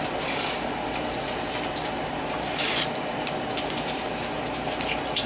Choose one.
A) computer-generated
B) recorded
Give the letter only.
A